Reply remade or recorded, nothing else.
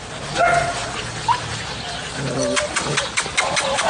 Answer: recorded